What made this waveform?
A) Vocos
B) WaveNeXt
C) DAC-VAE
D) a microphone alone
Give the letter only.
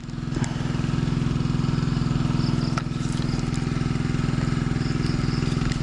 D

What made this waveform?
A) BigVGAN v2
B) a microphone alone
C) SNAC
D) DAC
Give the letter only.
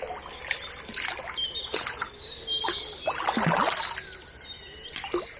B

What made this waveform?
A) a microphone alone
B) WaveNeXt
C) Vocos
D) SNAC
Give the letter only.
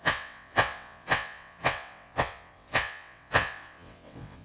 B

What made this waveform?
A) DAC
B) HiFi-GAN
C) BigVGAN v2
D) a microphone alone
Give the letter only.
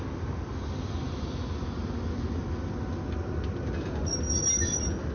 D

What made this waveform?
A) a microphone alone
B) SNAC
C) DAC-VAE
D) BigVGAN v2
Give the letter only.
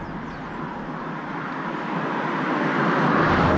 A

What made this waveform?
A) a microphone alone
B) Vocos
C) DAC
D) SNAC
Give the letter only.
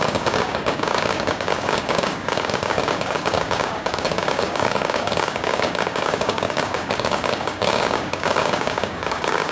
C